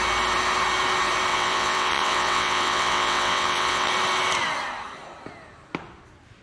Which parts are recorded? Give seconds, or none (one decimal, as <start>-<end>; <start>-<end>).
0.0-1.3; 3.9-6.4